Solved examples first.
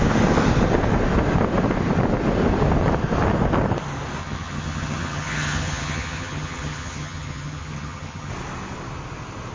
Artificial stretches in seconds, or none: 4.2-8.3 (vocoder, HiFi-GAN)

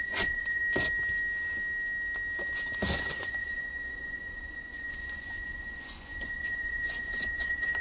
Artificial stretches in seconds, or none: 0.0-0.6 (vocoder, Vocos); 2.9-7.8